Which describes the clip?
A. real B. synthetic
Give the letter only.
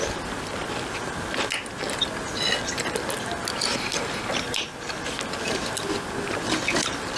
A